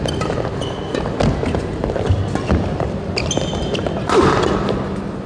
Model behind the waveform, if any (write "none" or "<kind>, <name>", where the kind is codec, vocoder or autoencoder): none